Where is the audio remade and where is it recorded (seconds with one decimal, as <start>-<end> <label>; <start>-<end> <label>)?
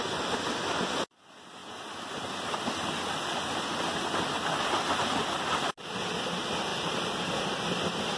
0.0-8.2 recorded